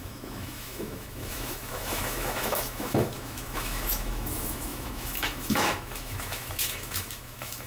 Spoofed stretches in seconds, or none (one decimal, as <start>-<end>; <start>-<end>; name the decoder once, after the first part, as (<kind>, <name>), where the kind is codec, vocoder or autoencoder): 0.0-7.7 (autoencoder, DAC-VAE)